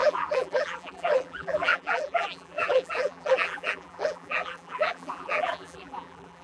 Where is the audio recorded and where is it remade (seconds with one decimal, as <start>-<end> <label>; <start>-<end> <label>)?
0.0-6.4 remade

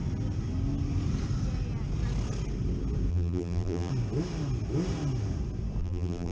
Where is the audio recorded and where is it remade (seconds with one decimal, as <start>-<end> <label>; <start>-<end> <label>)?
0.0-3.1 recorded; 3.1-3.9 remade; 3.9-5.8 recorded; 5.8-6.3 remade

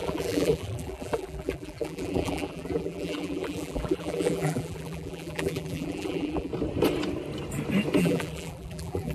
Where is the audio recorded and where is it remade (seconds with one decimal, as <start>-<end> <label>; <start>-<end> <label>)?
0.0-6.5 remade; 6.5-8.0 recorded; 8.0-9.1 remade

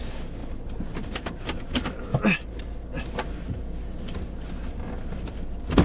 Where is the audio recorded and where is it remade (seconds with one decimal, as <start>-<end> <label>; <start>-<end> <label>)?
0.0-5.8 recorded

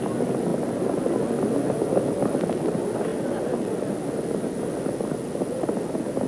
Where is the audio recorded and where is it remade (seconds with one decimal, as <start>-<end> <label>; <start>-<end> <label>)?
0.0-6.3 recorded

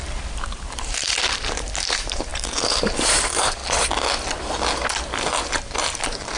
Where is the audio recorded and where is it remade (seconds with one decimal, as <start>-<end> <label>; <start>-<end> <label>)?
0.0-3.6 remade; 3.6-5.6 recorded; 5.6-6.4 remade